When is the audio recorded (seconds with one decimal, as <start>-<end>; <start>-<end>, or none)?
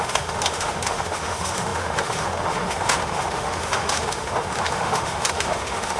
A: none